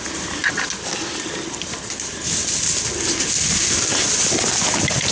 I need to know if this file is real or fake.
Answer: real